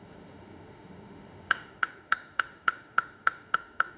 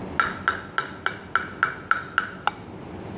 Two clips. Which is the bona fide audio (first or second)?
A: second